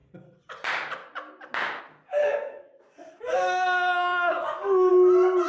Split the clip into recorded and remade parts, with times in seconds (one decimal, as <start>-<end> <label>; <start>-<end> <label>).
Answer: 0.0-2.2 recorded; 2.2-4.9 remade; 4.9-5.5 recorded